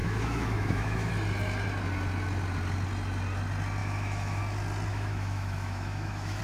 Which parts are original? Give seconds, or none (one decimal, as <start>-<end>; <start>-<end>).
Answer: 1.1-3.8; 4.4-4.9